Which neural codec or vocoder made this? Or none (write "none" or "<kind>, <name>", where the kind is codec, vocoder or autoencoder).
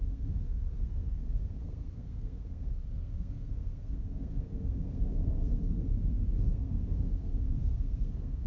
codec, SNAC